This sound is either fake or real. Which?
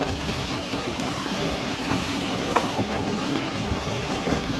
fake